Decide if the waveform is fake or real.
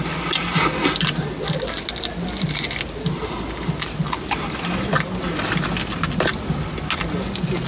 real